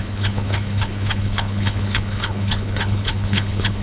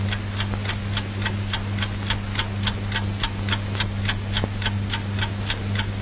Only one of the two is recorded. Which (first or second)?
second